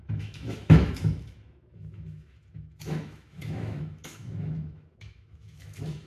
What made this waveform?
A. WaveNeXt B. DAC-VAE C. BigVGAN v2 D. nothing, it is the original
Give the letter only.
B